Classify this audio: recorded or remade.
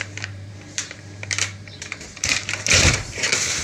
remade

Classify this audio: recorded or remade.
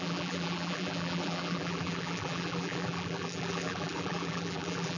remade